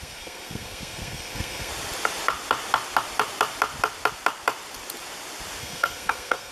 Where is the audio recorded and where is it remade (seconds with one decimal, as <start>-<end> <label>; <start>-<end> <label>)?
0.0-1.7 remade; 1.7-5.6 recorded; 5.6-6.5 remade